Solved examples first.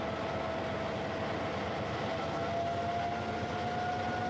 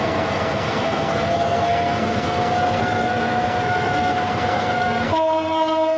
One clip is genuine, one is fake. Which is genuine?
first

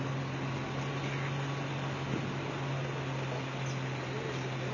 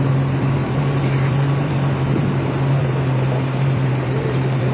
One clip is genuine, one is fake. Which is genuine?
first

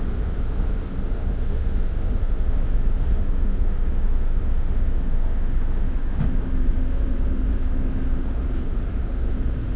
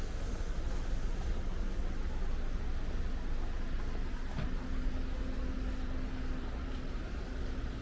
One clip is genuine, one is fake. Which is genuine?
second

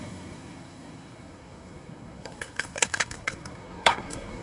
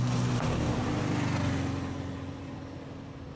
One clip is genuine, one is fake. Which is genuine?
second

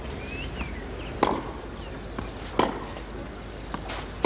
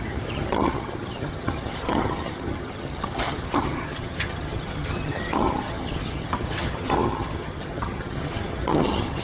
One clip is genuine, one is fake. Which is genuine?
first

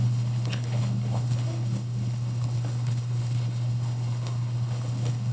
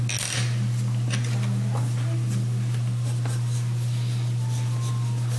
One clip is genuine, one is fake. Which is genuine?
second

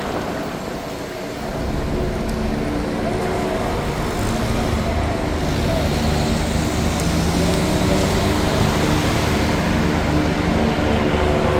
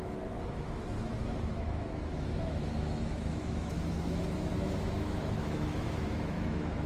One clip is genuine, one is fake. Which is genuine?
first